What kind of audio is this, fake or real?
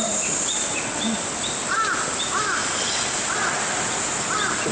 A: real